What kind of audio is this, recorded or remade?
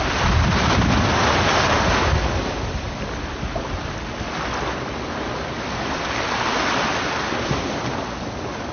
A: recorded